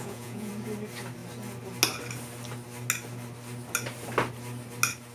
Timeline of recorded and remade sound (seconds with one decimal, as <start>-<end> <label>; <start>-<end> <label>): 0.0-0.5 remade; 0.5-5.1 recorded